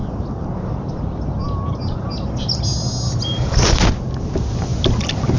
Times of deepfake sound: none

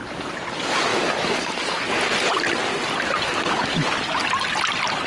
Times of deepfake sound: none

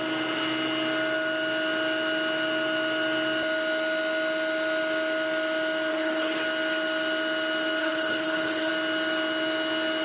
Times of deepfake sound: 5.9-6.4 (codec, HILCodec); 7.8-8.7

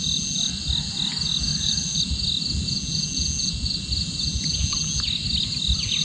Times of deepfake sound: 1.5-2.0 (vocoder, BigVGAN v2)

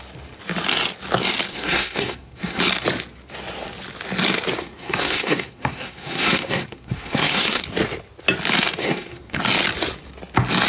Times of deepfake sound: 1.5-2.6 (codec, SNAC); 4.6-7.6; 8.8-9.4

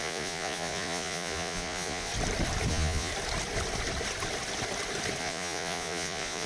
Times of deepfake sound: 0.0-2.1 (vocoder, Vocos); 2.7-3.1; 5.2-6.5